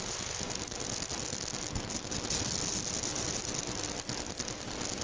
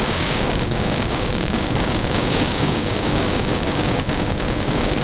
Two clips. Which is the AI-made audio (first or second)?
second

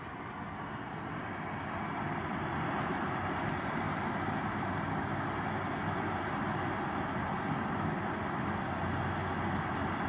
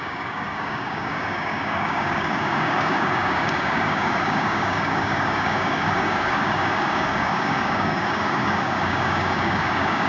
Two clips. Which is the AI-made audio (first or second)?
second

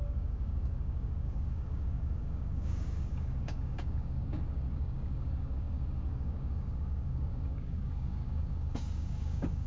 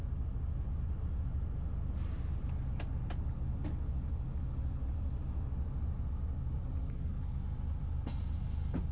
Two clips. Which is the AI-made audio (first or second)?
first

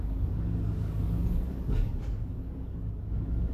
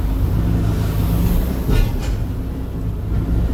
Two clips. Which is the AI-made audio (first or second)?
first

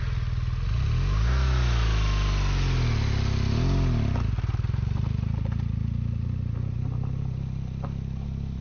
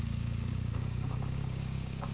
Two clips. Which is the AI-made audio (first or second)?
second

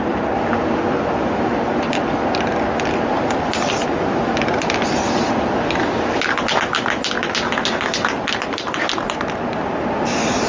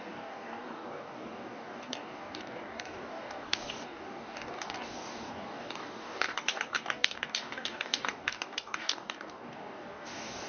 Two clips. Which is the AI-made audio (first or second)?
second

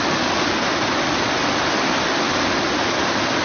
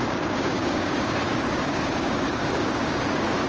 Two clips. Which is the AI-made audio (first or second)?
second